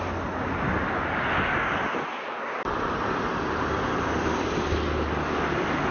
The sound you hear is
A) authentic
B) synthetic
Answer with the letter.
A